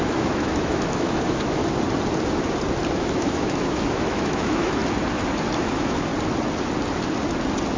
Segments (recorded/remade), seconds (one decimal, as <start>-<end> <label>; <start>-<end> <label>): 0.0-1.6 remade; 1.6-2.9 recorded; 2.9-4.8 remade; 4.8-5.6 recorded; 5.6-6.1 remade; 6.1-7.8 recorded